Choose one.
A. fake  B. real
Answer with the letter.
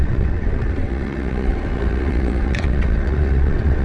A